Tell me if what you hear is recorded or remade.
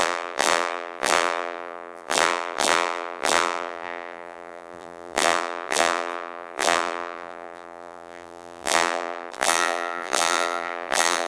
remade